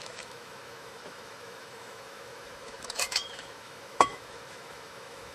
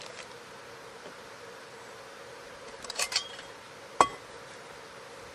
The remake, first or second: first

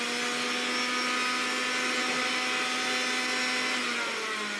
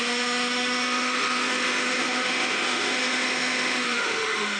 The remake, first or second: second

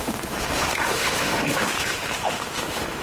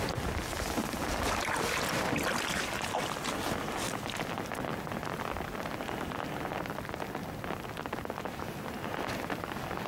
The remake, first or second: first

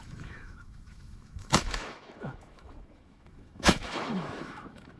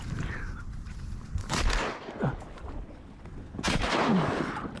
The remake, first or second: first